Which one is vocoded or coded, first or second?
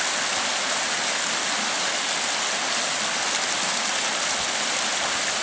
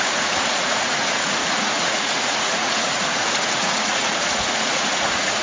second